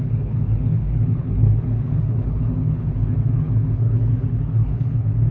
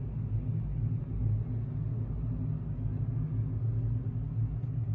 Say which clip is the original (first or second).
second